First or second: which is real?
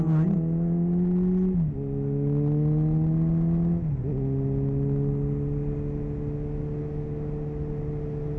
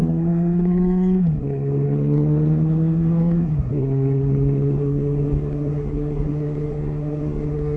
first